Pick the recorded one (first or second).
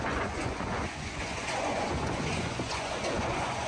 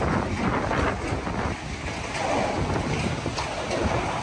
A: second